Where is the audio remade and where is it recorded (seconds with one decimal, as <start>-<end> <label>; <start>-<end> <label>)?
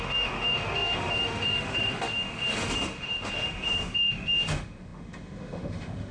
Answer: 0.0-6.1 remade